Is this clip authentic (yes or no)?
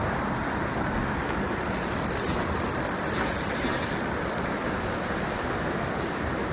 yes